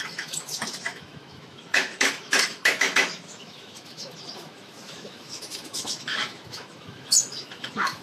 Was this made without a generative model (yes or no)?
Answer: no